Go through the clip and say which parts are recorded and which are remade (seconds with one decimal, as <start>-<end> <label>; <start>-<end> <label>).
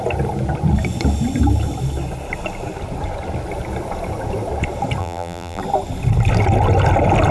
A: 0.0-5.0 recorded; 5.0-5.6 remade; 5.6-7.3 recorded